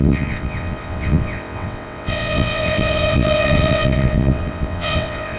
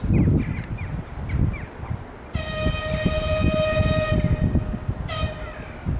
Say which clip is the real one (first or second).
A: second